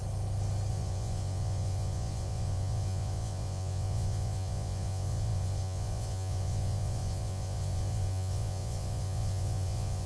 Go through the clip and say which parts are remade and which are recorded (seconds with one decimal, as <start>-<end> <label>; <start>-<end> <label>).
0.0-0.7 recorded; 0.7-10.1 remade